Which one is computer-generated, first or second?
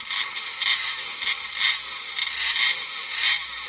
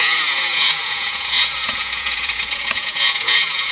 second